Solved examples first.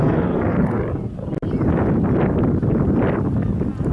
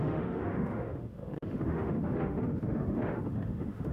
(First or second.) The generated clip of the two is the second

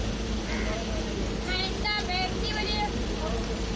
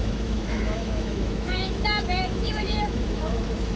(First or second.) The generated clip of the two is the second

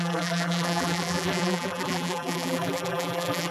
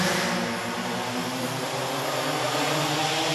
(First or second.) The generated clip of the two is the first